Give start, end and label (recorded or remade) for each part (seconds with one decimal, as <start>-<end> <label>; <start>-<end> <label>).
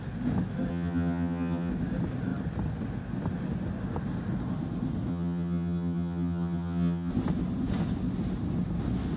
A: 0.0-0.7 recorded; 0.7-1.7 remade; 1.7-5.1 recorded; 5.1-7.1 remade; 7.1-9.2 recorded